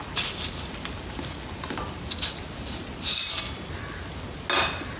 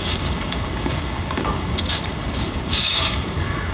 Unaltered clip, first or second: first